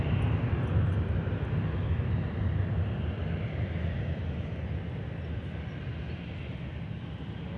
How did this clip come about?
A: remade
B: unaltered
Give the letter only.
B